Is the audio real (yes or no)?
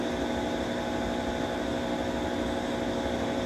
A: yes